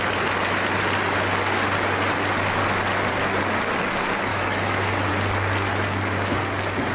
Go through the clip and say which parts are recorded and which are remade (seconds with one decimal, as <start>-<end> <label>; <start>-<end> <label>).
0.0-4.3 recorded; 4.3-5.1 remade; 5.1-6.9 recorded